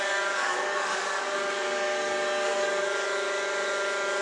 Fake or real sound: fake